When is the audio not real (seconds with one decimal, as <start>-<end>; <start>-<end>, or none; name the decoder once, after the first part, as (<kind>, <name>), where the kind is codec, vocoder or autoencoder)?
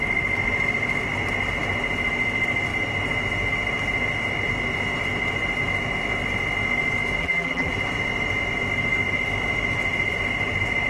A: 7.2-7.7 (vocoder, BigVGAN v2)